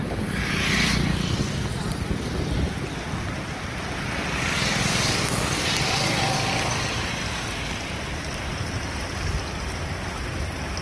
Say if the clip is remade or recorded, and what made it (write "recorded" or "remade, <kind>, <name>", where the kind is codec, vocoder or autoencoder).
recorded